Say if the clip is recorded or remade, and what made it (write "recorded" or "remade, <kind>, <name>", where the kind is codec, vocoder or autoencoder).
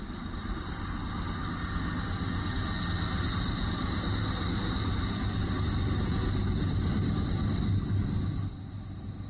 recorded